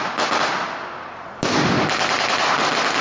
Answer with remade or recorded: recorded